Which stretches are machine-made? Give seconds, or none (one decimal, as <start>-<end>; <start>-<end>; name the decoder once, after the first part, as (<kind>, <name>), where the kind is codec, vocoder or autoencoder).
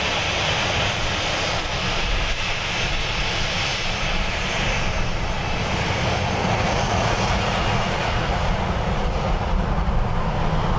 6.4-9.9 (vocoder, Vocos)